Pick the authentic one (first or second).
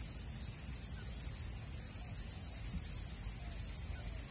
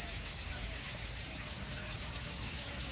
first